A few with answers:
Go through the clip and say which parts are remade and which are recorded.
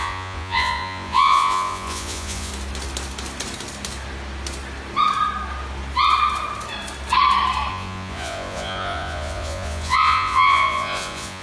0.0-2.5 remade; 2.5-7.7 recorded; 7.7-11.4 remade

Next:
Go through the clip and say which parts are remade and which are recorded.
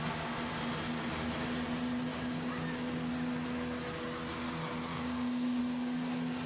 0.0-4.9 recorded; 4.9-5.6 remade; 5.6-6.5 recorded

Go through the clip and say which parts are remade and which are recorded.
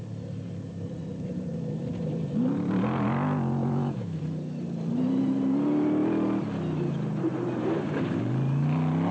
0.0-3.6 recorded; 3.6-4.2 remade; 4.2-9.1 recorded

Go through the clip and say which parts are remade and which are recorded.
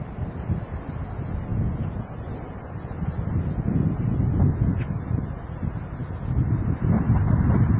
0.0-1.5 recorded; 1.5-2.3 remade; 2.3-7.8 recorded